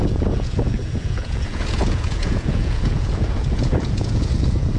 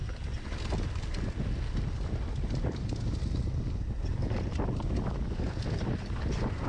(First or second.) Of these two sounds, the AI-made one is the first